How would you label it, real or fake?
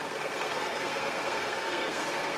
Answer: fake